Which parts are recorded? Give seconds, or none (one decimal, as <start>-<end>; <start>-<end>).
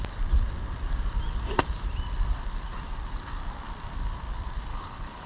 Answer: 0.0-4.7